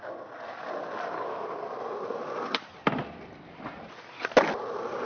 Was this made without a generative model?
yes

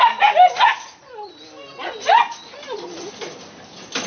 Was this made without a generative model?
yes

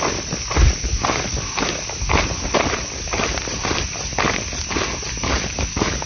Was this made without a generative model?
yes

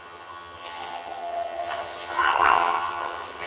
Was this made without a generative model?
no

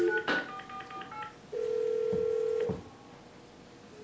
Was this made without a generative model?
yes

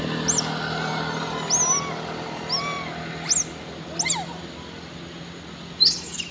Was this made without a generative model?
yes